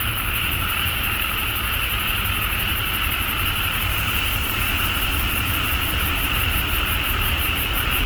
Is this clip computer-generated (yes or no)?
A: yes